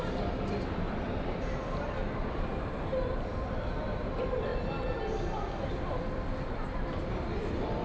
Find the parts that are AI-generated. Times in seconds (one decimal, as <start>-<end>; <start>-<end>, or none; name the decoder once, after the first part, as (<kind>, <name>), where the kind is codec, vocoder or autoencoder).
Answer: 0.0-2.5 (vocoder, BigVGAN v2); 3.4-4.5; 5.6-7.8